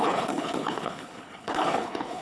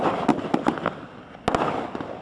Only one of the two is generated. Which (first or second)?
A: first